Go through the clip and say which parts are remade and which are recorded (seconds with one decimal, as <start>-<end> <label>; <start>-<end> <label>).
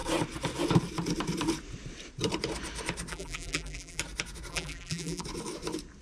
0.0-3.1 recorded; 3.1-4.0 remade; 4.0-4.5 recorded; 4.5-5.2 remade; 5.2-6.0 recorded